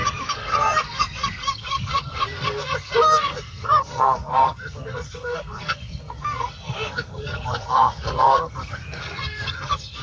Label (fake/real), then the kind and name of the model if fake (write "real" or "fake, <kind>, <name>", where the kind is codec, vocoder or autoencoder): fake, codec, SNAC